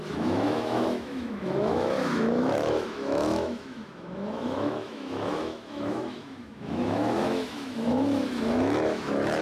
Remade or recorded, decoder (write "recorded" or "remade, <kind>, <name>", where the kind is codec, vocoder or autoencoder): remade, autoencoder, DAC-VAE